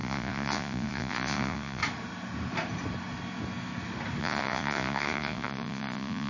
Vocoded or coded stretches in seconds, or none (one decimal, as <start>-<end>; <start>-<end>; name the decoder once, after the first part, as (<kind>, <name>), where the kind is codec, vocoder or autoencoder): 0.0-1.8 (vocoder, Vocos); 4.2-6.3